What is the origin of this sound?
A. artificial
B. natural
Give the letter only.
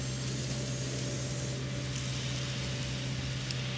B